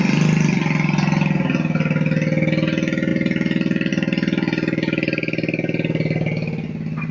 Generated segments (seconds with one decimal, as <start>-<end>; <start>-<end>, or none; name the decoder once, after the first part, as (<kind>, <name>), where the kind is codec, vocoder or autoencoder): none